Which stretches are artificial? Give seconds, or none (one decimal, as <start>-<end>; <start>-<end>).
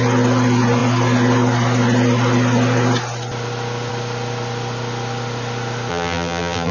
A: 5.9-6.7